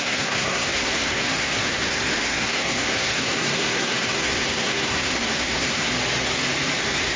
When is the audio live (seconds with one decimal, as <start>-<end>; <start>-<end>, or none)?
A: 5.9-6.8